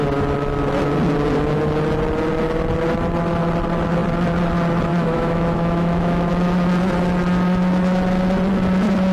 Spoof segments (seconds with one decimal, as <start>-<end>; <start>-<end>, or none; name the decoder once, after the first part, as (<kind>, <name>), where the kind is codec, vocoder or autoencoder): 4.9-6.3 (autoencoder, DAC-VAE)